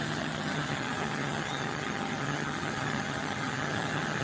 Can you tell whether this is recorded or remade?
remade